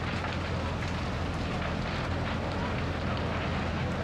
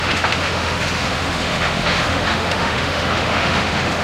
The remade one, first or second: second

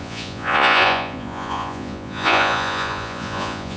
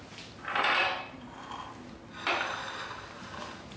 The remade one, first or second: first